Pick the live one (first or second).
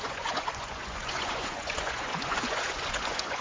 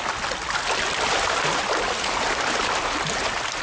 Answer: second